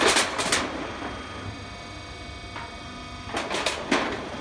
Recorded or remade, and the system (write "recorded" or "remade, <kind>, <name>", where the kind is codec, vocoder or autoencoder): recorded